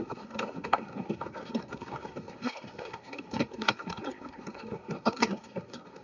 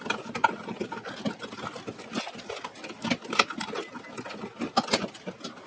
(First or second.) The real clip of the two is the second